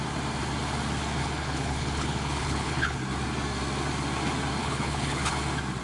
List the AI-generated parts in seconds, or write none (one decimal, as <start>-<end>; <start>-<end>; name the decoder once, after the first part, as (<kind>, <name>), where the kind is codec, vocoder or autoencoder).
1.2-3.0 (codec, HILCodec); 4.6-5.3